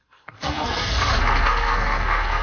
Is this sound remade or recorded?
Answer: remade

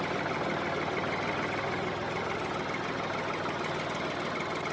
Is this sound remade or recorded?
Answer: recorded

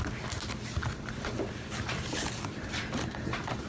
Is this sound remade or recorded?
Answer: recorded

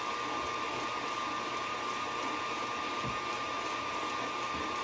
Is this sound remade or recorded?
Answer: recorded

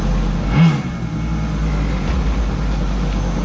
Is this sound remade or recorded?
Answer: recorded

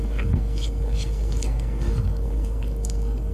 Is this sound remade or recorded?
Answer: remade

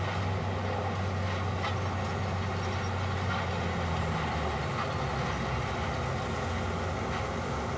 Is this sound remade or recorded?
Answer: recorded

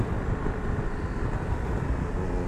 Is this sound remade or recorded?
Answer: recorded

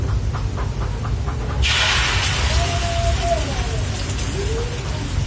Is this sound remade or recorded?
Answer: recorded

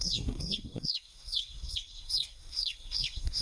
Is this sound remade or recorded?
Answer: remade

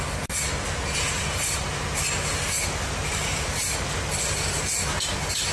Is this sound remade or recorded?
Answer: recorded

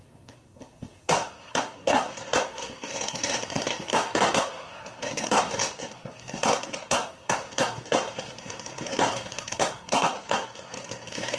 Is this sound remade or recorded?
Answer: remade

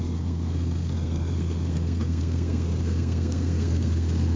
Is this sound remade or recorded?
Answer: remade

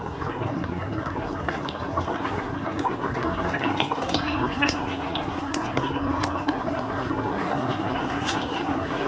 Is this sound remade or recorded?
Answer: remade